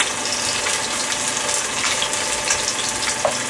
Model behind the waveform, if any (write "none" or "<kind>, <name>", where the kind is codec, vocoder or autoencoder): none